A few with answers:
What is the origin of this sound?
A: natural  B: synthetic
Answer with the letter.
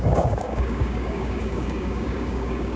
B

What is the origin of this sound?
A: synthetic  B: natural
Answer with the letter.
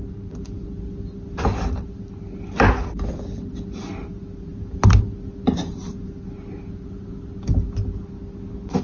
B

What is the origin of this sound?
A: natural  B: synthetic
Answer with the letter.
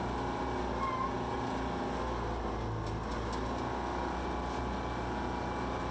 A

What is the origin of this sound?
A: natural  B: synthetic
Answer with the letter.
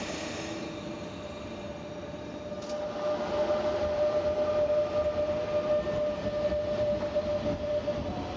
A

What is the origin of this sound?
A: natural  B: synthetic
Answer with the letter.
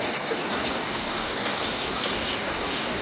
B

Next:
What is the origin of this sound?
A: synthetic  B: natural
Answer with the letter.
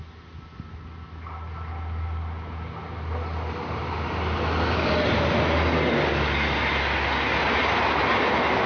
B